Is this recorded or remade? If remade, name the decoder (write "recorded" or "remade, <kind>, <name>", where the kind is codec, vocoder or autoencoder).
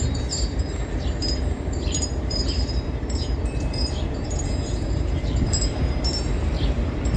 remade, vocoder, BigVGAN v2